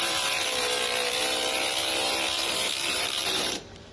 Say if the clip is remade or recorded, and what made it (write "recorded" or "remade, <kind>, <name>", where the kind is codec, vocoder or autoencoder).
remade, vocoder, BigVGAN v2